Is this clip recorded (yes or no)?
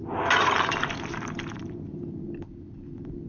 no